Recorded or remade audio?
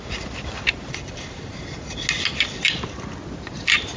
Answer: recorded